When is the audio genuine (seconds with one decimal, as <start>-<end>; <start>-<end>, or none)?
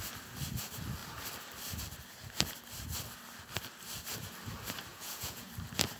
0.0-4.9; 5.5-6.0